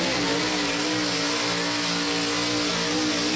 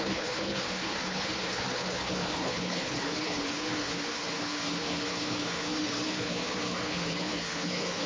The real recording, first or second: first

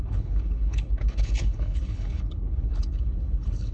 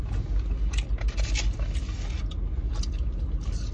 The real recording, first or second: second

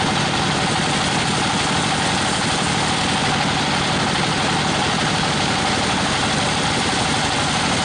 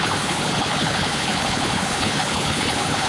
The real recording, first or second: first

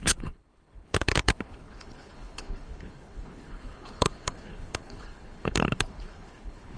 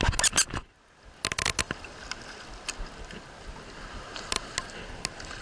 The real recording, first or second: second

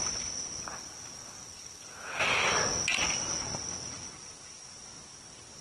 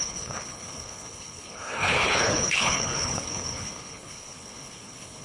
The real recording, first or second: first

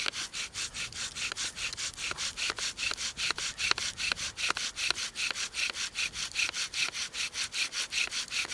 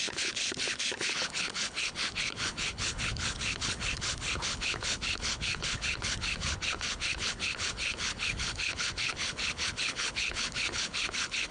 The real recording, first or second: first